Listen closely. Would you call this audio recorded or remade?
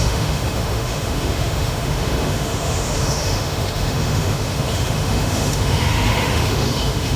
remade